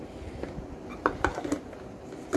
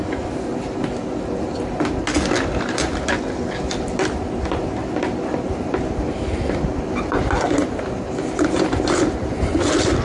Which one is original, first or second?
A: second